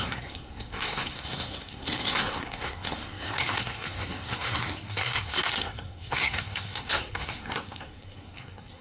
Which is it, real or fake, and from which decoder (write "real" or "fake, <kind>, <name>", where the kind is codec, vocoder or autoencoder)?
fake, codec, SNAC